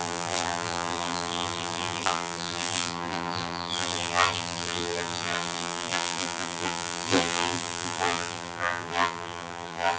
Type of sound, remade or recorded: remade